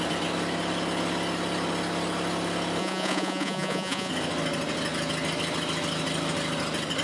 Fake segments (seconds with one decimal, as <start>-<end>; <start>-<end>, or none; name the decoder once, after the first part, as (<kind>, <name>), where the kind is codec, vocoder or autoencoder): 2.8-4.1 (vocoder, Vocos)